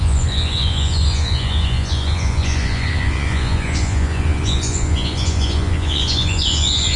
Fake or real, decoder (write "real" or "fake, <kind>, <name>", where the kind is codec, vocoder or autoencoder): fake, vocoder, Vocos